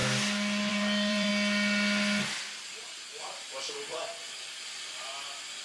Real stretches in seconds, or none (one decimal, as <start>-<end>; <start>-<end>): 0.0-0.7; 1.3-4.7